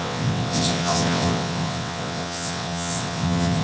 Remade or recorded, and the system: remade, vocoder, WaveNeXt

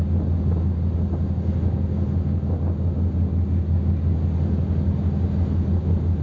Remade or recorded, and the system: recorded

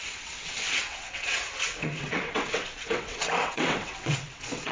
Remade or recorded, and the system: remade, vocoder, WaveNeXt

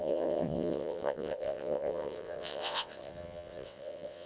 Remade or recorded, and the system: remade, vocoder, WaveNeXt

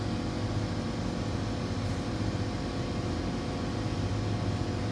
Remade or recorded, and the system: recorded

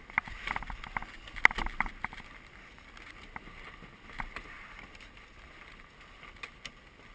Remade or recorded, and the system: recorded